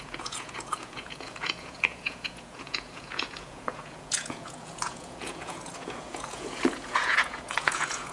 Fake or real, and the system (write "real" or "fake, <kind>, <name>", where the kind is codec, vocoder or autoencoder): fake, vocoder, Vocos